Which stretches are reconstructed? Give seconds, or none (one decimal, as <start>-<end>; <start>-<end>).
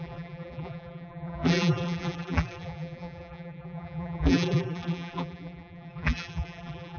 0.0-7.0